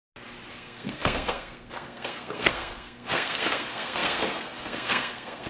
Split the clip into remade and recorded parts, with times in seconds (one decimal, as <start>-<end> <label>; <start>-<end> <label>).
0.0-0.5 recorded; 0.5-5.5 remade